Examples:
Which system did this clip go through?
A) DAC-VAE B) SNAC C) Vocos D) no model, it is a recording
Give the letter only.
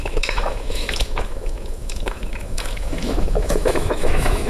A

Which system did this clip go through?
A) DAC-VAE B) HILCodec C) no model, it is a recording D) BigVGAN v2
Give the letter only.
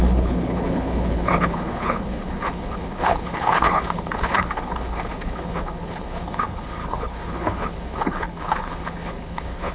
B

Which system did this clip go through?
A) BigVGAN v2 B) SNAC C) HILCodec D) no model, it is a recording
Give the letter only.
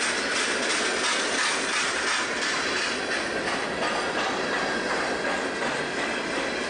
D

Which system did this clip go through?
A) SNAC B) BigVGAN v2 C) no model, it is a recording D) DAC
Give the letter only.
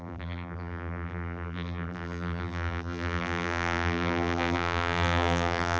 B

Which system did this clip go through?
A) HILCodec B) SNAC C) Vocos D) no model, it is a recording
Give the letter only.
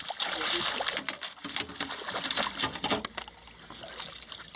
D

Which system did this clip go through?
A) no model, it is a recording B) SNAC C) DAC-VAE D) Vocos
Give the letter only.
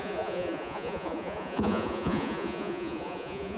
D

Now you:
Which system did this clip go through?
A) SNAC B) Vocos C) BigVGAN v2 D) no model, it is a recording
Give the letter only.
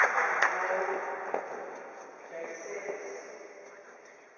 D